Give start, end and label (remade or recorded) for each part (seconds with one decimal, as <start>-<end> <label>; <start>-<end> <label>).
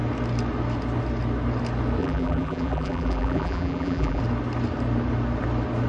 0.0-2.0 recorded; 2.0-4.2 remade; 4.2-5.9 recorded